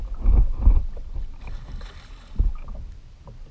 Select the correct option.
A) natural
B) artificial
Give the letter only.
A